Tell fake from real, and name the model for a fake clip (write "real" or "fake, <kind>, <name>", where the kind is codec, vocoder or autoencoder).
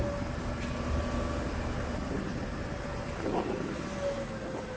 real